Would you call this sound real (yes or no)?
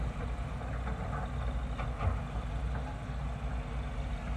yes